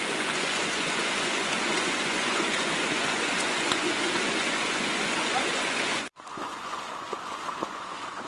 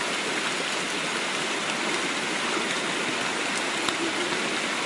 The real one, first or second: second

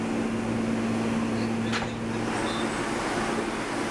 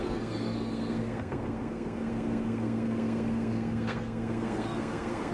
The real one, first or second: first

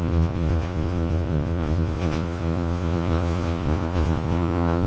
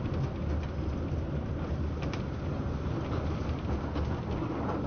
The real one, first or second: second